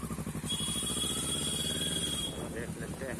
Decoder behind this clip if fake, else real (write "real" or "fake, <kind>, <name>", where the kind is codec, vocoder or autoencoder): real